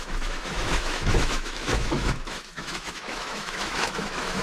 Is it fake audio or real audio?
fake